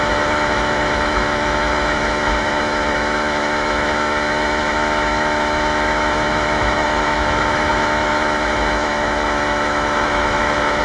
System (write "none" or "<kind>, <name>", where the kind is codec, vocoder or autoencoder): autoencoder, DAC-VAE